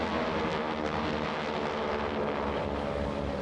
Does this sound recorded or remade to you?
recorded